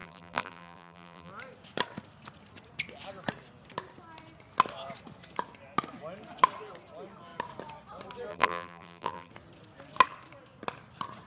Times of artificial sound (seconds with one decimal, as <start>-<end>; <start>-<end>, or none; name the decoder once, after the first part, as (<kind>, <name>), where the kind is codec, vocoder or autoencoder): 0.0-1.3 (vocoder, BigVGAN v2); 8.3-9.3